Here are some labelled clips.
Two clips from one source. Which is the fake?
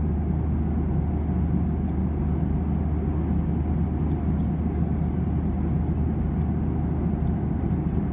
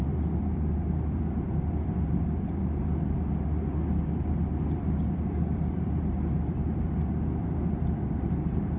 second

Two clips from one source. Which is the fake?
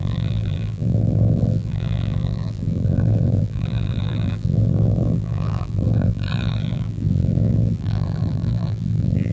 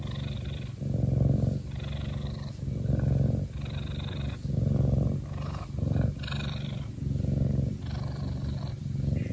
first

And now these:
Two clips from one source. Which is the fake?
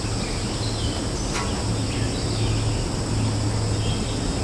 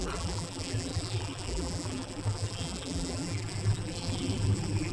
second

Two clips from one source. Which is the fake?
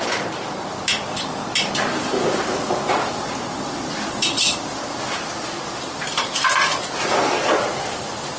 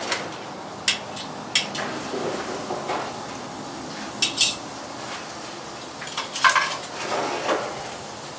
first